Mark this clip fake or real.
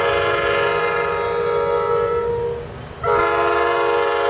real